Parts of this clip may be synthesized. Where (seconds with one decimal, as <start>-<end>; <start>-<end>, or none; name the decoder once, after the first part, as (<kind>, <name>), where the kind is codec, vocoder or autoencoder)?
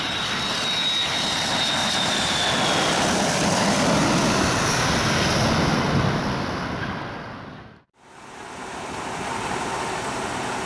1.8-2.5 (vocoder, BigVGAN v2)